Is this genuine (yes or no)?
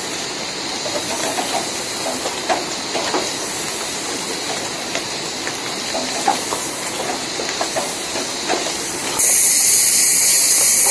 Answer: yes